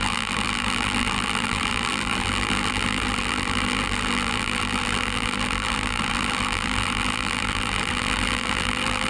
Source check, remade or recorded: remade